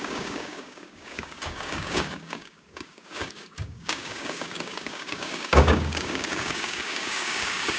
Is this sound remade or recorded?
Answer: remade